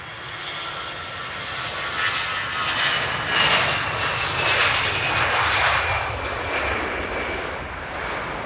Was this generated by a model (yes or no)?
yes